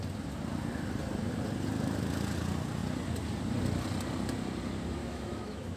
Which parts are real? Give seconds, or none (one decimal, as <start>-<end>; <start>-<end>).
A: 0.0-5.0